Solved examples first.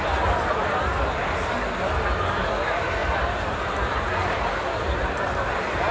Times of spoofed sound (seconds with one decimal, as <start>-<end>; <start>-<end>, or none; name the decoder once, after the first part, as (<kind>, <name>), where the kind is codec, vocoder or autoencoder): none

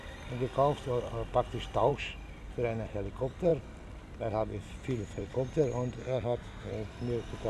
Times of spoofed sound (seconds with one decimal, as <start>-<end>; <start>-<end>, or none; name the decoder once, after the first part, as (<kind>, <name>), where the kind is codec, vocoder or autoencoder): 6.0-6.7 (autoencoder, DAC-VAE)

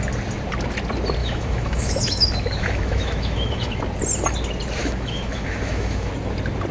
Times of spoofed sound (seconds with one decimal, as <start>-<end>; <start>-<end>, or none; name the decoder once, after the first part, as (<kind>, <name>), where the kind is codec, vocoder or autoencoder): 1.2-3.8 (autoencoder, DAC-VAE); 4.8-6.1

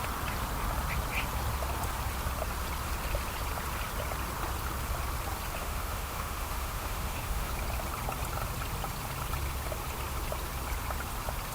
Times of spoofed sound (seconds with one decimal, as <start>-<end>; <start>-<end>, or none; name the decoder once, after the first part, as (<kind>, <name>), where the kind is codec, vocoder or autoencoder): 5.6-7.5 (autoencoder, DAC-VAE)

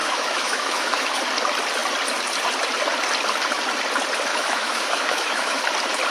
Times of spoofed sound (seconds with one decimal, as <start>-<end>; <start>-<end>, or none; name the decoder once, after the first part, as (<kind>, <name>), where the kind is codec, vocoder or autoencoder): 0.0-1.2 (autoencoder, DAC-VAE); 4.3-5.6

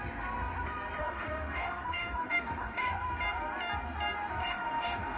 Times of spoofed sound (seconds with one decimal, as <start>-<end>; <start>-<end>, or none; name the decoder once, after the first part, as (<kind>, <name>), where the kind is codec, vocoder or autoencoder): 1.0-3.0 (autoencoder, DAC-VAE); 4.4-5.2

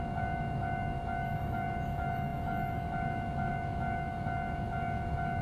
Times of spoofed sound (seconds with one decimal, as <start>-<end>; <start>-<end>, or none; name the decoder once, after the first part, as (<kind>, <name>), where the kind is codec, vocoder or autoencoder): 0.0-5.4 (autoencoder, DAC-VAE)

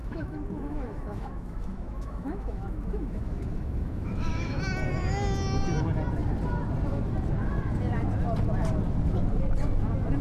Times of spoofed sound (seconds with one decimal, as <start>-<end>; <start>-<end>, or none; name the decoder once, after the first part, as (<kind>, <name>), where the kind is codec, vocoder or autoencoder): 0.0-4.6 (autoencoder, DAC-VAE)